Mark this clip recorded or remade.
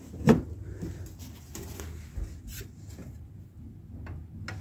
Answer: recorded